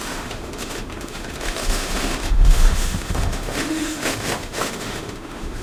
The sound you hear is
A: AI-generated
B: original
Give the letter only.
A